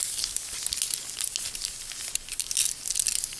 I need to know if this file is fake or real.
real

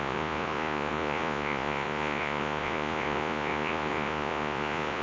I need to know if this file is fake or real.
fake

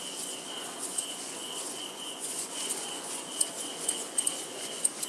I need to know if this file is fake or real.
fake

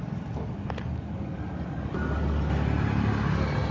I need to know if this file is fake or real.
real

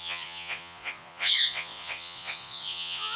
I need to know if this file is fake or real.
fake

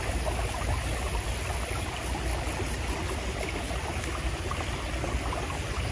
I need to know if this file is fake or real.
real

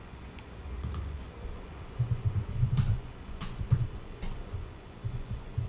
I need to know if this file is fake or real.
fake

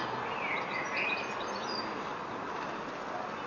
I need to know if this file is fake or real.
real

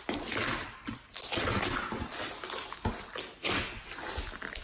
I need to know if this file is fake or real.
real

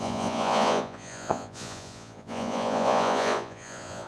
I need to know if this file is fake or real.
fake